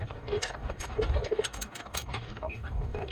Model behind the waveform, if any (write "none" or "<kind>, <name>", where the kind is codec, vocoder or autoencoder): codec, DAC